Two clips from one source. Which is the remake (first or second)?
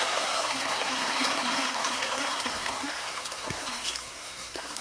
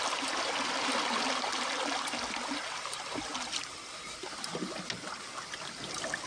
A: first